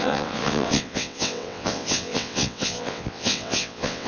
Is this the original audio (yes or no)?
no